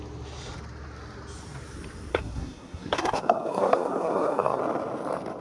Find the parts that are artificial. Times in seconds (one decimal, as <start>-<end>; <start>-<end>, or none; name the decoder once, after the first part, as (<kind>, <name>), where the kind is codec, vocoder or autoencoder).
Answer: 2.1-4.6 (codec, SNAC)